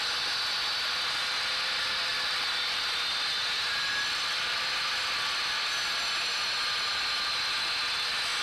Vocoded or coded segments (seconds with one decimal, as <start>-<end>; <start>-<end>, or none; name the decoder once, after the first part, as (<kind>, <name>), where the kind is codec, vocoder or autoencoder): 2.1-2.8 (vocoder, BigVGAN v2)